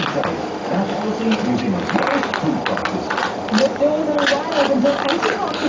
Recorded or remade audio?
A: recorded